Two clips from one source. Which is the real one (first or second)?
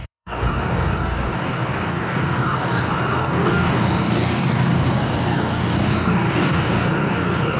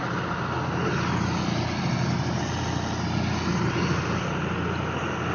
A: second